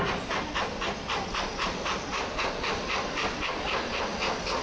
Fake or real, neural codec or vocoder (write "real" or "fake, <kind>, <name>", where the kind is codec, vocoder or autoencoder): real